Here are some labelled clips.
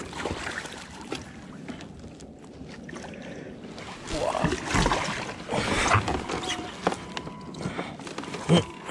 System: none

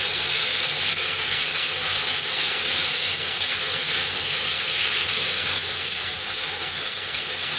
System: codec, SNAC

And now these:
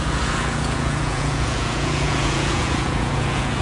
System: vocoder, Vocos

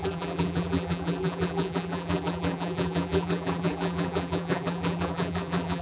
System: vocoder, BigVGAN v2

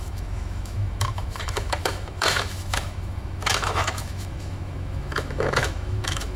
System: autoencoder, DAC-VAE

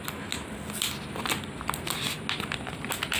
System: none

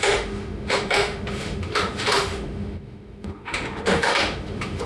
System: autoencoder, DAC-VAE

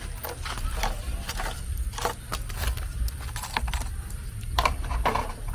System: none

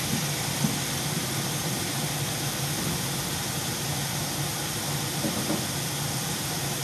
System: none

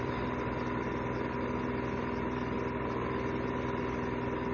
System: none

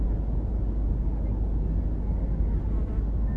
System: none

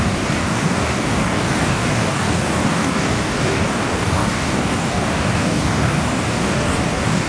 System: codec, DAC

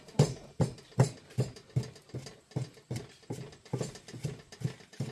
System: none